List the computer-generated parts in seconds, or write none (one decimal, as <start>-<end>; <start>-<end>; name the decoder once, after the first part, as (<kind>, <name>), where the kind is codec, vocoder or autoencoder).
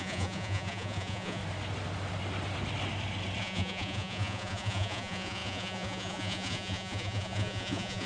0.0-1.4 (vocoder, Vocos); 3.4-8.1